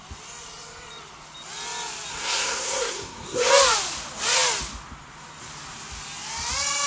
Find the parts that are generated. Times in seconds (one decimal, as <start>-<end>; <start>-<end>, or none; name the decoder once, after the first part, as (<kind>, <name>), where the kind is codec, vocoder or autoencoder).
2.1-3.5 (codec, SNAC)